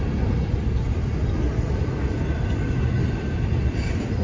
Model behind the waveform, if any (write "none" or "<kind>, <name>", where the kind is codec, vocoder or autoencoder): none